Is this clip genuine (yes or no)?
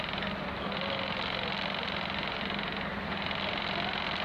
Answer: yes